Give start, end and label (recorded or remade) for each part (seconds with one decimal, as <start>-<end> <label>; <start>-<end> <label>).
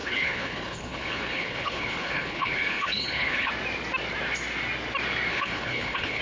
0.0-3.5 remade; 3.5-5.3 recorded; 5.3-6.2 remade